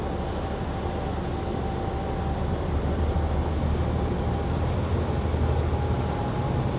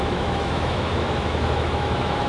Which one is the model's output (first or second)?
second